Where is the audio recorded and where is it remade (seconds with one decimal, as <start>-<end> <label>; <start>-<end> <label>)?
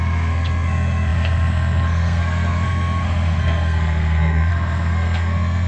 0.0-5.7 remade